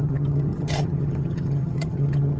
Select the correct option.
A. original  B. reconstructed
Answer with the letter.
B